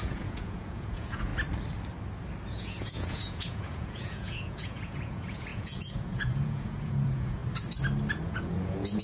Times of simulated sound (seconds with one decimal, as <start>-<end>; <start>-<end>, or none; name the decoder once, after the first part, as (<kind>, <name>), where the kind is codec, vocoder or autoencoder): 0.0-1.3 (vocoder, Vocos); 2.5-7.4; 8.1-9.0